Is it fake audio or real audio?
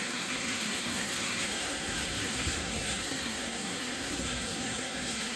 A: fake